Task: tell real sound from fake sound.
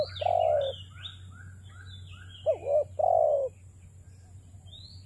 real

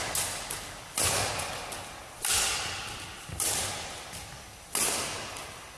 real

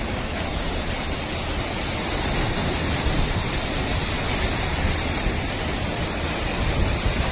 real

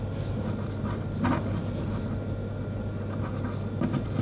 real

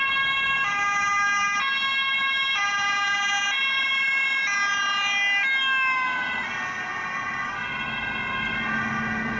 real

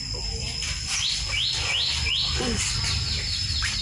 real